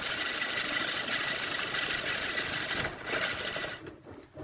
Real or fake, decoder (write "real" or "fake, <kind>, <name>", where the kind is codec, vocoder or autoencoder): real